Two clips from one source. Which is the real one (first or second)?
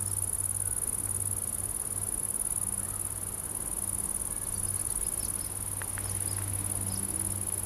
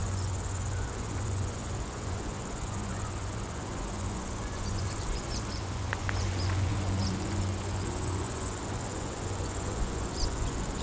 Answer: first